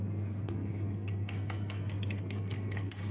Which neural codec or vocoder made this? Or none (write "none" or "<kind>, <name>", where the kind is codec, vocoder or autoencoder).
codec, SNAC